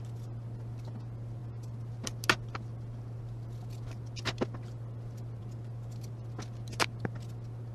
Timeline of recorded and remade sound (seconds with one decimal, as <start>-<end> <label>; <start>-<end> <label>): 0.0-7.7 recorded